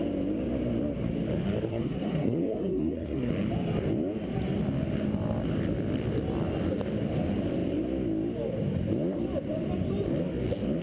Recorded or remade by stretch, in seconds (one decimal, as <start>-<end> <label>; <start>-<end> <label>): 0.0-1.7 recorded; 1.7-3.3 remade; 3.3-10.8 recorded